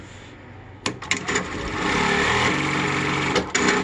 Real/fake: real